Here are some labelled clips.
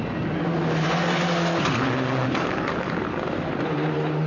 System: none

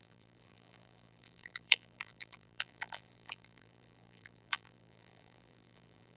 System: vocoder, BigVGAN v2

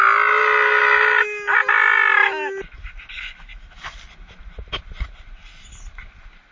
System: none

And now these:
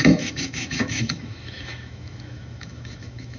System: autoencoder, DAC-VAE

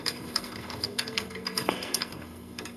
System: codec, SNAC